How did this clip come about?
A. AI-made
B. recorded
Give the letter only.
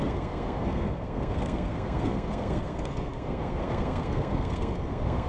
A